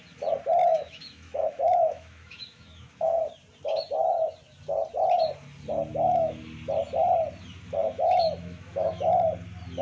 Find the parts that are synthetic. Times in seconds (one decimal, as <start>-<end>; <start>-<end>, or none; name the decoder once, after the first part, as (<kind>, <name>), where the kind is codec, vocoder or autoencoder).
0.7-3.2 (autoencoder, DAC-VAE); 5.9-6.4; 7.8-9.1